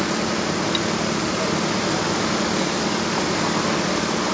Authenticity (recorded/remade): recorded